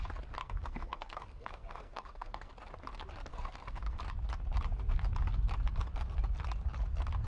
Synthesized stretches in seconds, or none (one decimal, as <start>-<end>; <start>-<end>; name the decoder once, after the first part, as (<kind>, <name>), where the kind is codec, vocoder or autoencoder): 0.4-2.5 (codec, SNAC); 3.3-4.0

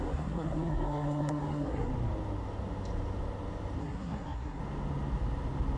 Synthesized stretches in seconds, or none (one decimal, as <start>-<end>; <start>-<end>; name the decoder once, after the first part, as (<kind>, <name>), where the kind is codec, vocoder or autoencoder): 0.0-1.9 (codec, SNAC); 3.8-4.6

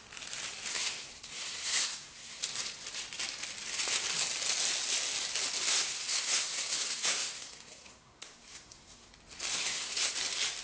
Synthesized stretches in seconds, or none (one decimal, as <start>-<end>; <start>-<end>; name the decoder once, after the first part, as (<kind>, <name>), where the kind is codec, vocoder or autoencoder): 0.7-2.4 (codec, SNAC); 5.7-9.1; 9.5-10.1

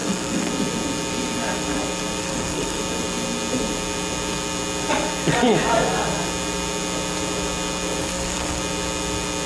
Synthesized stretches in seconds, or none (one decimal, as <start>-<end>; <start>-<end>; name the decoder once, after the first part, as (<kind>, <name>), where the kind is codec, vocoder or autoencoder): 0.0-0.5 (codec, SNAC); 2.2-2.8; 8.0-8.6

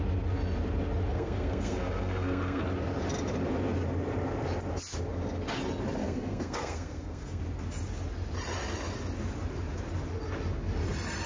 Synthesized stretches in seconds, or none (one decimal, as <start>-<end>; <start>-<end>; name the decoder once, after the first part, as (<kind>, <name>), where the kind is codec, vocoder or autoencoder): 1.1-2.6 (codec, SNAC); 6.0-7.4

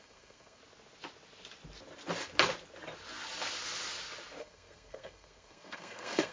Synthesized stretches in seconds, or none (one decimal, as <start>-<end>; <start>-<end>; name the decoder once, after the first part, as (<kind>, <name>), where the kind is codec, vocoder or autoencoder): 0.0-0.6 (codec, SNAC); 4.4-6.3

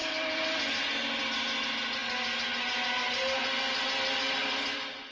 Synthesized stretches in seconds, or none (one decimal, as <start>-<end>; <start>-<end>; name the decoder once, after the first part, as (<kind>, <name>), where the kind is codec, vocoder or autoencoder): none

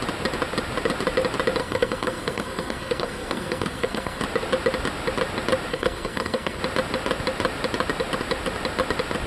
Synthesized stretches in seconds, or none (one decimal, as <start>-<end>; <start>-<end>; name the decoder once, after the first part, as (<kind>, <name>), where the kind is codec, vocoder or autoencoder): 1.6-4.2 (codec, SNAC); 5.7-6.6